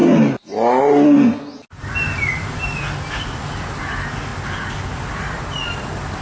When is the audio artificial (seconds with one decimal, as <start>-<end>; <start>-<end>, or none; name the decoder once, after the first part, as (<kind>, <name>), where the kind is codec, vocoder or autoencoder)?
none